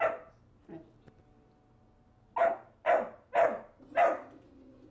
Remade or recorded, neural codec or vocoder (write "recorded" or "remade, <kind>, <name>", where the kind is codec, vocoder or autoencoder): recorded